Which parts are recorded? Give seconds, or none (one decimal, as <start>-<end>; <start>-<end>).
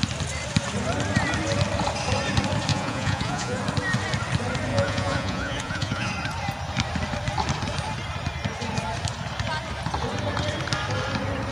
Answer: 0.0-2.7; 3.6-4.7; 6.1-11.5